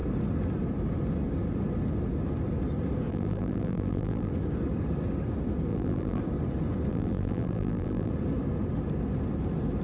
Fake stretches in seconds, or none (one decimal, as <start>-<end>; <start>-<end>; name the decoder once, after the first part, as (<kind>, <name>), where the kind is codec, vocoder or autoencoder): 3.1-4.3 (vocoder, BigVGAN v2); 5.7-6.2; 6.9-8.1